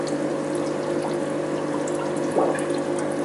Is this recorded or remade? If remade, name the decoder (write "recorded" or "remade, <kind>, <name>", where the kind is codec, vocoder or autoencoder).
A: recorded